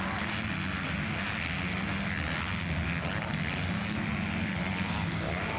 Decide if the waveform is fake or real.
real